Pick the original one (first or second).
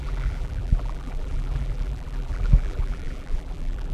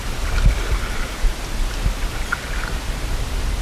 second